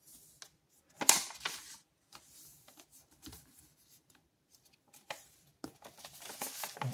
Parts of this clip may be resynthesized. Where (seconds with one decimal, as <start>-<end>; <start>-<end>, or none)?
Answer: 2.5-5.5